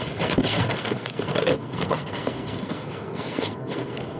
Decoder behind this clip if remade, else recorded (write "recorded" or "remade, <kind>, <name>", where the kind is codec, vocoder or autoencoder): remade, codec, SNAC